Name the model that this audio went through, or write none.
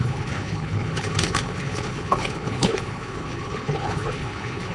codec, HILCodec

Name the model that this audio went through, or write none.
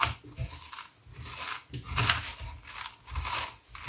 none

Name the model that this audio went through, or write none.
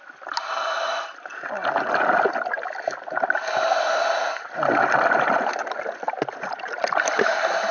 none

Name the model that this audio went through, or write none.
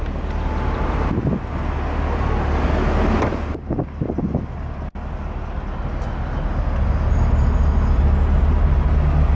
none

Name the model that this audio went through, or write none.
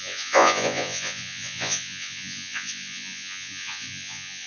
vocoder, Vocos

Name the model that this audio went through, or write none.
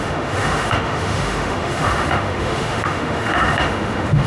autoencoder, DAC-VAE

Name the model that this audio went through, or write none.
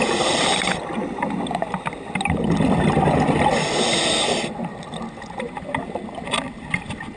none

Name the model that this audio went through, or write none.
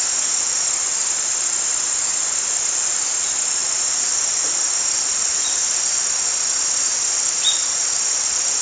none